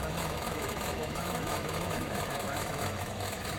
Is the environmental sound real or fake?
fake